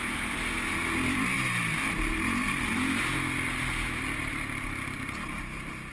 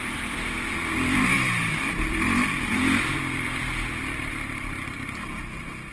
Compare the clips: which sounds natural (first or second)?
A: first